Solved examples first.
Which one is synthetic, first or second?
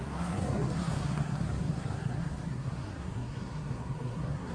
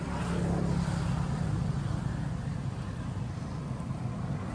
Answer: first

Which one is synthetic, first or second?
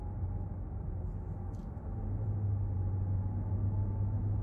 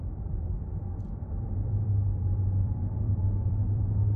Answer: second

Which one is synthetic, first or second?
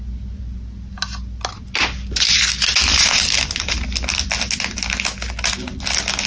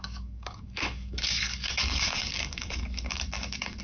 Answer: second